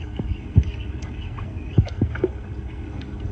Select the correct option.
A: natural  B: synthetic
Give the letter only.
B